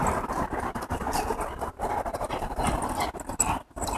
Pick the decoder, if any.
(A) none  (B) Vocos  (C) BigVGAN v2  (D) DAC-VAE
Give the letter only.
A